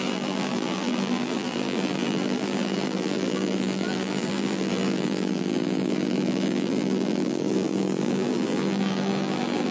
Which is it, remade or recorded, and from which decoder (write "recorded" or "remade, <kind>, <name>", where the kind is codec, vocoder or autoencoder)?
remade, vocoder, BigVGAN v2